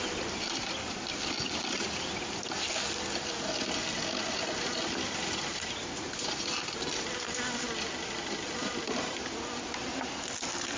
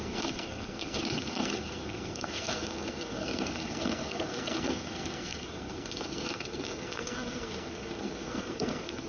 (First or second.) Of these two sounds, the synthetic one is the second